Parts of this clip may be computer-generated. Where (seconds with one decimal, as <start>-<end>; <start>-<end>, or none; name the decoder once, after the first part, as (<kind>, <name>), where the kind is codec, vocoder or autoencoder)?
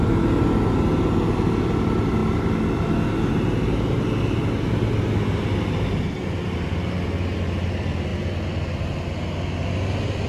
none